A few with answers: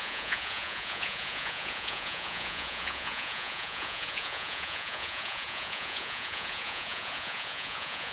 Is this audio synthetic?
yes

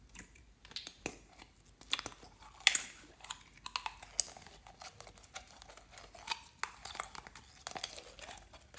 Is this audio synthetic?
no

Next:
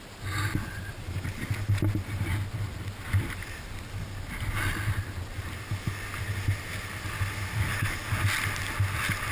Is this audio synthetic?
no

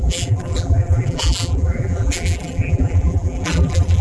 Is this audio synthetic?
yes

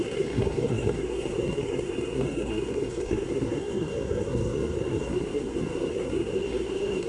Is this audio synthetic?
yes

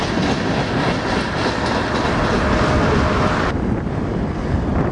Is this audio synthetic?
no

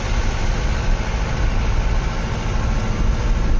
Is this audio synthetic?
no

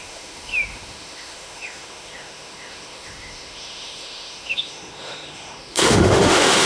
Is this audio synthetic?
yes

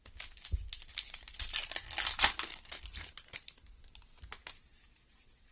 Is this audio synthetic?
no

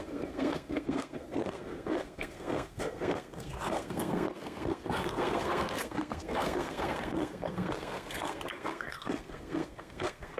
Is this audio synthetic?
yes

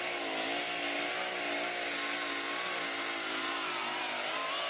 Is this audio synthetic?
no